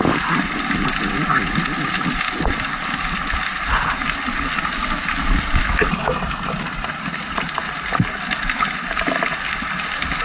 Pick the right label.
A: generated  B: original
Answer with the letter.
B